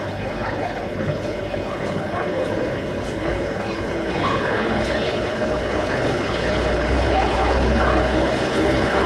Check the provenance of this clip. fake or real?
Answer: fake